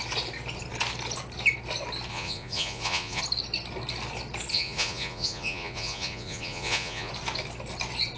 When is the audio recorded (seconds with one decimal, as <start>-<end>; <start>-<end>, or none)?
0.0-2.1; 3.2-4.5; 7.1-8.2